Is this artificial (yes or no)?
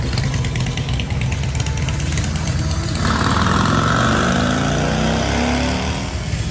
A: no